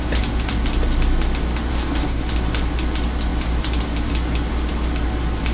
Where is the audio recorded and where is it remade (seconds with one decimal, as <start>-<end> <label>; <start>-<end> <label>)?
0.0-1.7 recorded; 1.7-2.2 remade; 2.2-5.5 recorded